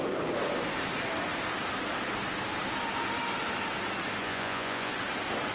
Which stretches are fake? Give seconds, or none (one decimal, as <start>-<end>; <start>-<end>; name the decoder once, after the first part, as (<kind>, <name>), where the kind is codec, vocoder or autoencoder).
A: 4.2-4.9 (vocoder, Vocos)